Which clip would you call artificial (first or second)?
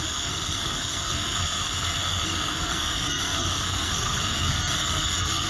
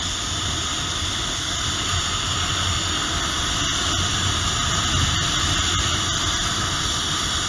first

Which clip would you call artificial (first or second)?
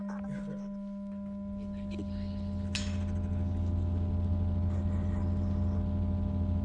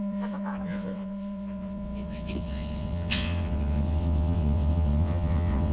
second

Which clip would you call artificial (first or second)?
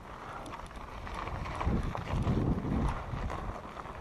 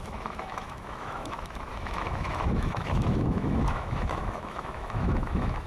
second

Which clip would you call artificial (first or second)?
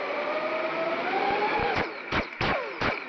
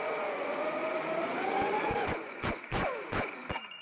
second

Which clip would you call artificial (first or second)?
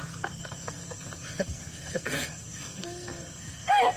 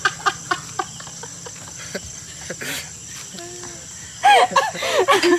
first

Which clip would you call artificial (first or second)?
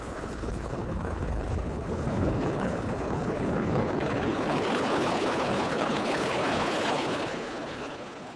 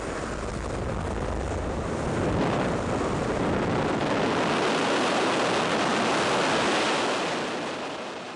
first